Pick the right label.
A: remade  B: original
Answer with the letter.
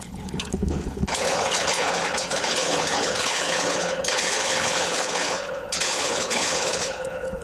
A